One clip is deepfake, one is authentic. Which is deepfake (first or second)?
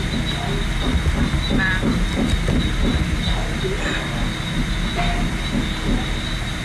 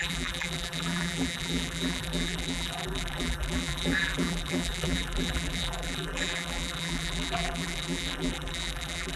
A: second